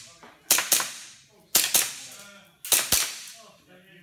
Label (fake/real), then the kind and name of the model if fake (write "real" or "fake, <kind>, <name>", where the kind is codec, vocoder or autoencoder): real